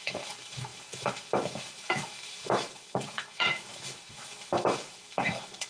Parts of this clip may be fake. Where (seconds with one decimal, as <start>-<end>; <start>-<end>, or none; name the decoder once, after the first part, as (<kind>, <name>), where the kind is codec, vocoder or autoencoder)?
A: 0.0-5.7 (autoencoder, DAC-VAE)